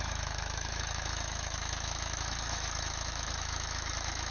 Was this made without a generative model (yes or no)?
no